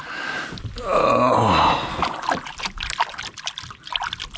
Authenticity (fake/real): real